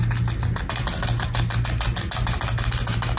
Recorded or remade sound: recorded